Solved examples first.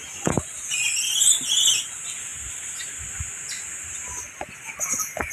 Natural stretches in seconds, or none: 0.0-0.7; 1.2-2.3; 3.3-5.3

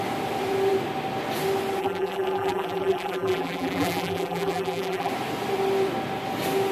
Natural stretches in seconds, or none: 0.0-1.8; 5.1-6.7

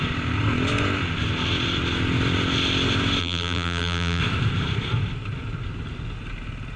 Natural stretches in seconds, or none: 0.0-3.2; 4.2-6.8